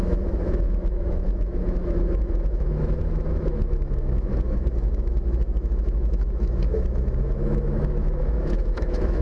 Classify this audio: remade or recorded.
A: remade